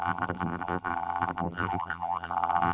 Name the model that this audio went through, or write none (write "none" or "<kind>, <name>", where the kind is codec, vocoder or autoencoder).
vocoder, BigVGAN v2